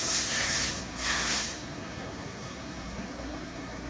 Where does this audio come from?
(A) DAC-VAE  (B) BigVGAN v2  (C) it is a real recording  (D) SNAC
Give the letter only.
D